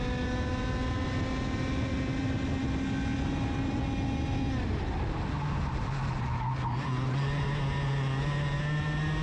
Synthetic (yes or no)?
no